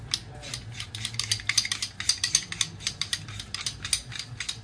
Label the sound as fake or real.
real